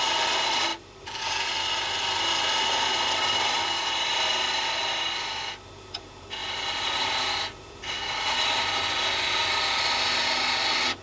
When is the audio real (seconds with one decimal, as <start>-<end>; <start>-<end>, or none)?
0.0-0.7; 1.5-6.4; 7.3-11.0